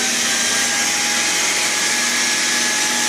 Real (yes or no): yes